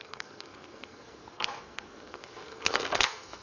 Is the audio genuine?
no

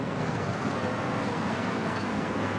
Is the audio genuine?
no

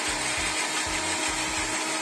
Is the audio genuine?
yes